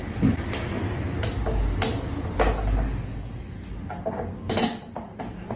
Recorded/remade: recorded